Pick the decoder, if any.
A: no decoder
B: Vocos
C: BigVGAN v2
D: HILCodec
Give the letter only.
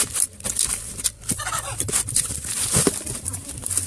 C